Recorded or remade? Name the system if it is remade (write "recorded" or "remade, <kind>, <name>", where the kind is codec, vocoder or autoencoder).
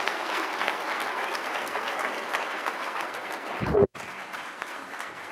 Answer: remade, codec, SNAC